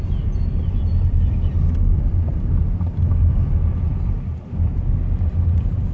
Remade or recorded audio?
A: remade